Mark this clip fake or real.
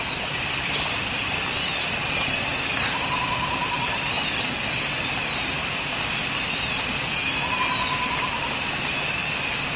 real